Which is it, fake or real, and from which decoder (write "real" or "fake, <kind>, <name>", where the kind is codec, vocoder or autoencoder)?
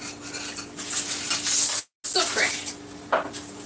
real